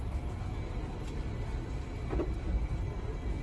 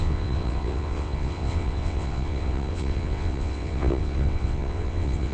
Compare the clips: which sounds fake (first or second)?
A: second